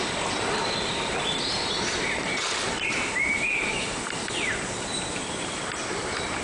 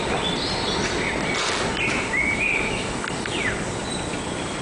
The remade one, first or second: first